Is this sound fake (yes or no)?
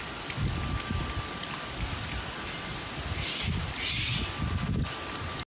no